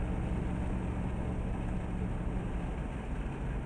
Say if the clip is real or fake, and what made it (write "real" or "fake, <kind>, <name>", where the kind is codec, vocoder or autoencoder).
real